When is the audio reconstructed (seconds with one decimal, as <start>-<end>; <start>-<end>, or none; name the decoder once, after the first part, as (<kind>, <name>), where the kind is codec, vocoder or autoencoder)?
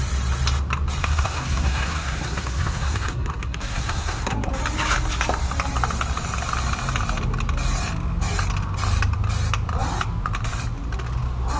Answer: 1.0-4.5 (codec, SNAC)